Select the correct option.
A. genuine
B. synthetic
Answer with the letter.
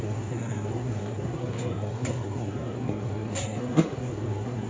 B